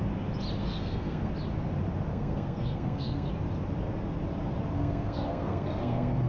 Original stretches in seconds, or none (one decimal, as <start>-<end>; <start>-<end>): 0.0-0.6; 1.3-2.1; 3.3-4.7